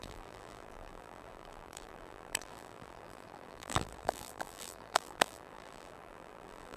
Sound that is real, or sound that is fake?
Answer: fake